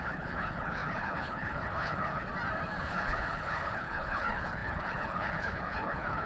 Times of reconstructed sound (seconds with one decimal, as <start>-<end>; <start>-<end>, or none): 0.0-2.3; 2.8-6.3